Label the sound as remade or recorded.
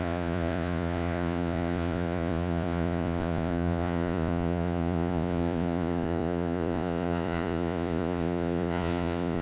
remade